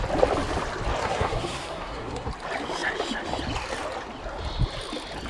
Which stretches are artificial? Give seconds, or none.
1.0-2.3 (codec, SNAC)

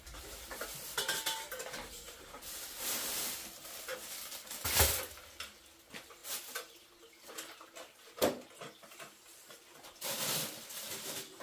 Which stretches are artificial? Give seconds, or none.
none

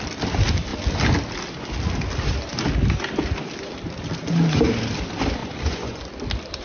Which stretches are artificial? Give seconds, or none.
5.4-6.0 (vocoder, Vocos)

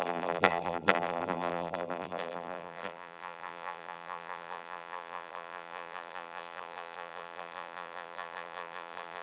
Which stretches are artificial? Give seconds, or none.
0.0-9.2 (vocoder, BigVGAN v2)